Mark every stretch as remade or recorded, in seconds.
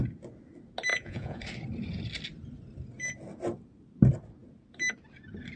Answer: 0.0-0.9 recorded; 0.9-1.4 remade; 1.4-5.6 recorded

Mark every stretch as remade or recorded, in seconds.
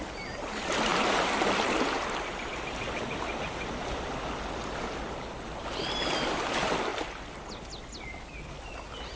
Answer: 0.0-9.2 recorded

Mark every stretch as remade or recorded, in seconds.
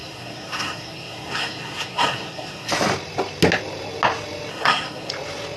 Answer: 0.0-2.7 remade; 2.7-4.5 recorded; 4.5-5.1 remade; 5.1-5.6 recorded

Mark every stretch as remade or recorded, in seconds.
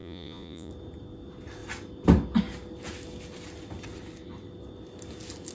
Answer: 0.0-0.7 remade; 0.7-5.5 recorded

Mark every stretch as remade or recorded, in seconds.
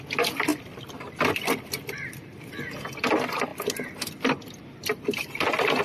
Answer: 0.0-0.5 recorded; 0.5-2.4 remade; 2.4-3.5 recorded; 3.5-5.8 remade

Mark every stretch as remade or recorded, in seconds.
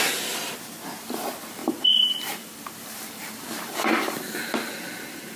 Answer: 0.0-1.6 recorded; 1.6-4.5 remade; 4.5-5.4 recorded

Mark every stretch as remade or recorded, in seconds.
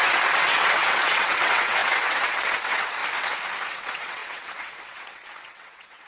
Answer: 0.0-3.0 remade; 3.0-3.7 recorded; 3.7-6.1 remade